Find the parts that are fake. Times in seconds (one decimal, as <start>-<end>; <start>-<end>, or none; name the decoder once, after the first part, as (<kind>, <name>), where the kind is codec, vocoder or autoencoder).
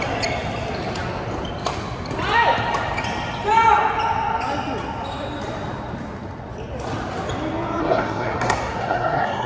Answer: 7.8-9.5 (codec, SNAC)